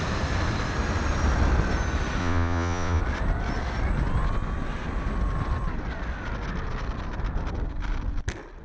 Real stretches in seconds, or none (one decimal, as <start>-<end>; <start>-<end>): 0.0-2.2; 3.0-8.6